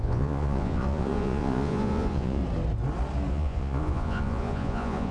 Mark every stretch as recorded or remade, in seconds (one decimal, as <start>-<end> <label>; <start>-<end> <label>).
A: 0.0-2.4 remade; 2.4-3.3 recorded; 3.3-5.1 remade